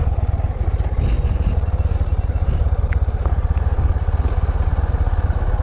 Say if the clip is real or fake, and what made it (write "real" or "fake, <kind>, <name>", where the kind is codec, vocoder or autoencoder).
real